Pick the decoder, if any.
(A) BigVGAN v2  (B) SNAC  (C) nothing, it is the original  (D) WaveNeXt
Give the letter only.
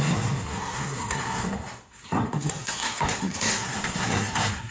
B